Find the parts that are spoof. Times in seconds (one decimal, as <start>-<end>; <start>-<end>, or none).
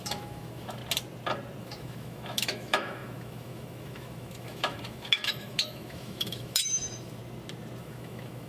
0.0-0.8; 1.6-7.2; 7.8-8.5